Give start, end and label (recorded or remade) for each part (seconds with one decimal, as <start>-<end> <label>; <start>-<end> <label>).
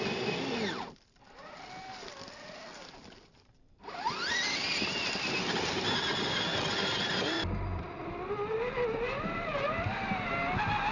0.0-10.9 recorded